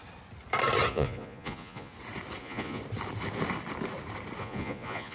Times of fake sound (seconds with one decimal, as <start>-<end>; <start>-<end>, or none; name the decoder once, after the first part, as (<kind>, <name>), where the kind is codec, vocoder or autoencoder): 0.9-1.9 (vocoder, Vocos); 2.4-2.8; 4.4-5.1